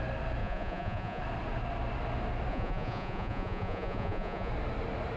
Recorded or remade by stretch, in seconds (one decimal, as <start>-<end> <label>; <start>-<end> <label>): 0.0-0.4 recorded; 0.4-1.2 remade; 1.2-2.5 recorded; 2.5-4.5 remade; 4.5-5.2 recorded